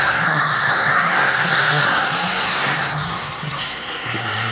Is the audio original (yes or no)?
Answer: no